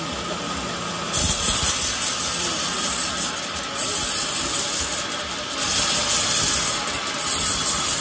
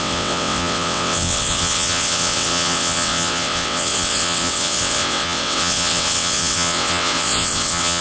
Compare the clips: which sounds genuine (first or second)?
first